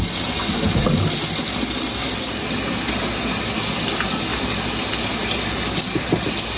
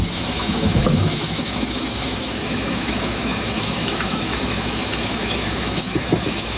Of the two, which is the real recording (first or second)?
first